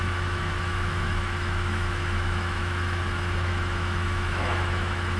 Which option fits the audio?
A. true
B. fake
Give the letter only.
B